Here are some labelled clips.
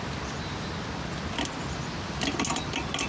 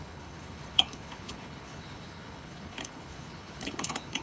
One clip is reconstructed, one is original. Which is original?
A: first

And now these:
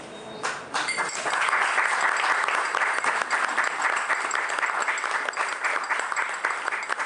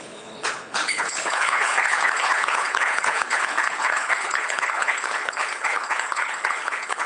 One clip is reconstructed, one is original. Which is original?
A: first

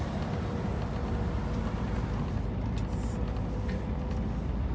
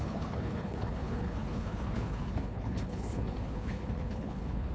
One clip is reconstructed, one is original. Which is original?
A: first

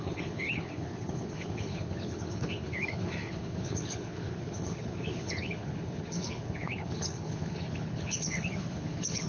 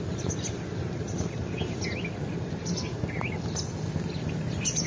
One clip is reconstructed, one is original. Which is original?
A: second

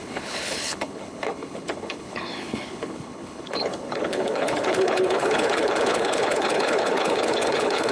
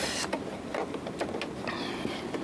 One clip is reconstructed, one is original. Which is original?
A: second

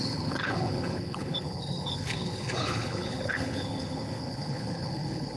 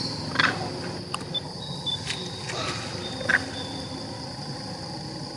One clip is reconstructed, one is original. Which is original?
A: second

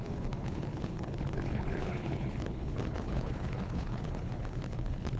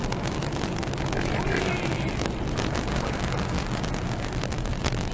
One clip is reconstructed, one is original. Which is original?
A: second